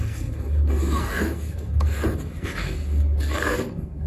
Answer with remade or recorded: remade